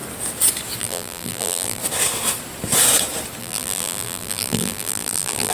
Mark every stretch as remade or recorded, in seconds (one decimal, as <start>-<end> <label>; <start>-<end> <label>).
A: 0.0-0.8 recorded; 0.8-1.8 remade; 1.8-3.4 recorded; 3.4-5.5 remade